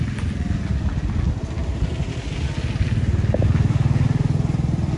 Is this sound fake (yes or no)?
no